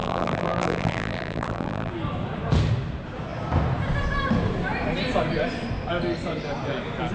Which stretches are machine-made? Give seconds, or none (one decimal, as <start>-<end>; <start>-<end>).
0.0-1.9